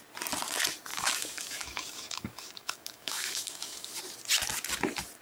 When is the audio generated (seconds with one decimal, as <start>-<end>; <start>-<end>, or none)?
0.9-4.0